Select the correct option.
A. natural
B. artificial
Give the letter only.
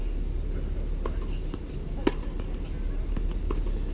A